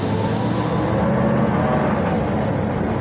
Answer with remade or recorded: recorded